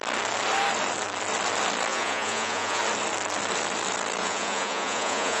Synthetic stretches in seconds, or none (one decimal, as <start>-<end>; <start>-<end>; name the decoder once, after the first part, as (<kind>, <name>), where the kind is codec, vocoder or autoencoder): 1.9-2.8 (vocoder, Vocos); 4.2-5.4